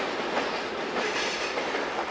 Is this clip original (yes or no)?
yes